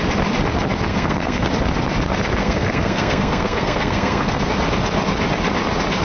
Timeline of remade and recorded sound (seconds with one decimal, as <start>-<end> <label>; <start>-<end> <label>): 0.0-0.9 recorded; 0.9-1.5 remade; 1.5-2.4 recorded; 2.4-4.4 remade; 4.4-6.0 recorded